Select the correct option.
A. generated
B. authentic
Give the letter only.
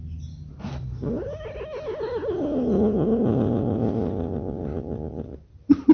B